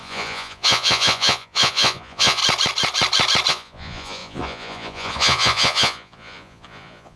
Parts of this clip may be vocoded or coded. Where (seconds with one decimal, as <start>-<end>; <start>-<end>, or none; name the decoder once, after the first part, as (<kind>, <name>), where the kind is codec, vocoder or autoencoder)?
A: 0.0-2.4 (vocoder, Vocos); 3.5-7.2